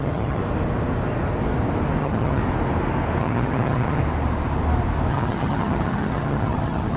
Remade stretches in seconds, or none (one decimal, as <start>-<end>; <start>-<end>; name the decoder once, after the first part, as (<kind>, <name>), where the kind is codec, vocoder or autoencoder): 0.0-0.4 (vocoder, HiFi-GAN); 2.0-2.4; 3.2-4.0; 5.1-7.0